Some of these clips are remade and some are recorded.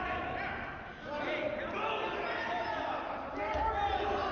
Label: recorded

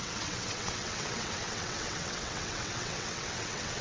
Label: remade